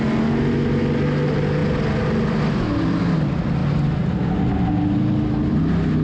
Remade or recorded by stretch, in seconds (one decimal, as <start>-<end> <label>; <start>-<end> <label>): 0.0-6.0 recorded